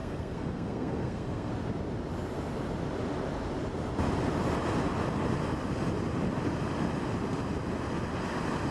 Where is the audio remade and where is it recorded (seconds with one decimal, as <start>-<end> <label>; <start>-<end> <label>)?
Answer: 0.0-1.5 remade; 1.5-8.7 recorded